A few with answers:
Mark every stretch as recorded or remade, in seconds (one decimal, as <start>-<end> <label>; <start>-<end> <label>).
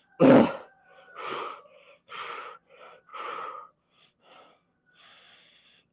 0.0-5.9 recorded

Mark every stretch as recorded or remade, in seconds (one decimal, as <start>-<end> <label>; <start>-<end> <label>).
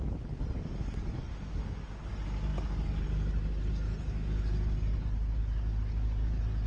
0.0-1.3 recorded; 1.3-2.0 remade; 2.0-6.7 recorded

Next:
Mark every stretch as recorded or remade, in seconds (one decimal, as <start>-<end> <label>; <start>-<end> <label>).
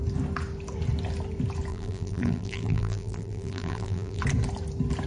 0.0-1.7 recorded; 1.7-4.2 remade; 4.2-5.1 recorded